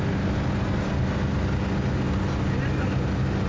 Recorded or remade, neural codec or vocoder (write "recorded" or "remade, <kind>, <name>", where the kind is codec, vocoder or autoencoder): recorded